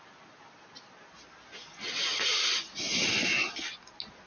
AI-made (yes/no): no